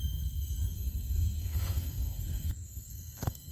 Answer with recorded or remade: remade